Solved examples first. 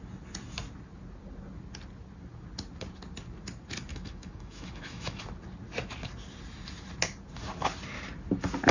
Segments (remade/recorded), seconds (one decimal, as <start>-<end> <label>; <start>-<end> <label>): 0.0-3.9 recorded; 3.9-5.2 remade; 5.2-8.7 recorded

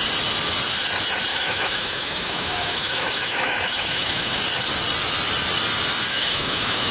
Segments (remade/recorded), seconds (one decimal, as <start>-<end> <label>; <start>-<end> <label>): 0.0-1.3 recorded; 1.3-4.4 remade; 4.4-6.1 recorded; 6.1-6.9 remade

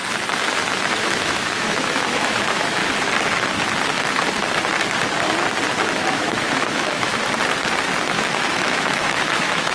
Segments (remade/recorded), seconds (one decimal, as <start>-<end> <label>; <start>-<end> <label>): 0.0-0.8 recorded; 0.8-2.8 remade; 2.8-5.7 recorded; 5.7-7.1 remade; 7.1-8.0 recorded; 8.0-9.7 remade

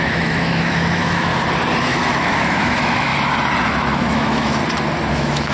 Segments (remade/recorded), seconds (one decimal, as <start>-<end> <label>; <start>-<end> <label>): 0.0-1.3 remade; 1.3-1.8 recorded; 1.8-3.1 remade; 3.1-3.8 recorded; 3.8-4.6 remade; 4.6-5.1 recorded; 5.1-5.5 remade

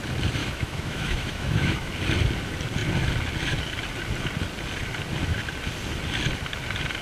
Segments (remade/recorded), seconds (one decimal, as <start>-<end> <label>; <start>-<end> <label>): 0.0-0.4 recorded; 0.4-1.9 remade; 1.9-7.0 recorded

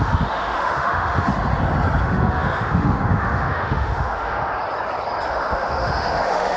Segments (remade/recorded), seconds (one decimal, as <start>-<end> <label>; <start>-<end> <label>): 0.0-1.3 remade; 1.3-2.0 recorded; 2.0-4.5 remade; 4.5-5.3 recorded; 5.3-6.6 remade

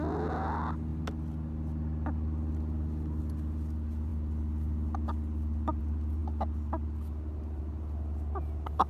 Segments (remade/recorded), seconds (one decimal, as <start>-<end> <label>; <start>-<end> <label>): 0.0-8.9 recorded